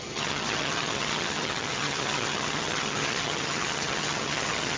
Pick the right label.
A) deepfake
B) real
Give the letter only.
A